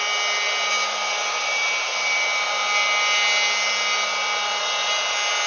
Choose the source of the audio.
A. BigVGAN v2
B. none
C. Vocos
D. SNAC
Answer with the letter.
B